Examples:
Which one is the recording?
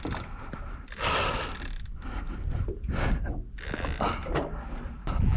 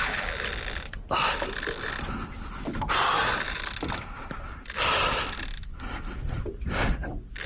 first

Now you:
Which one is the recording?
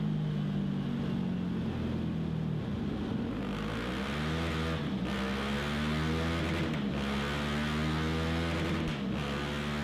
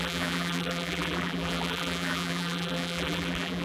first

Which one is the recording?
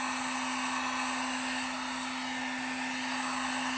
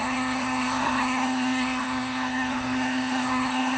first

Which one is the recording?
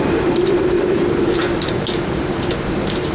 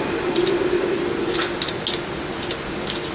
second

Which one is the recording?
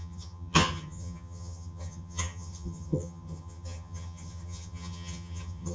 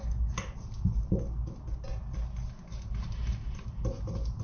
second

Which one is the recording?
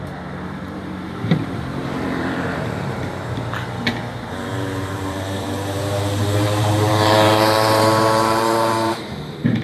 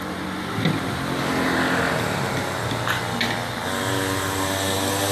second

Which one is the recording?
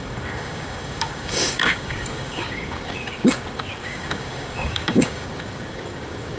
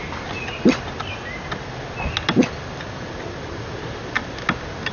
second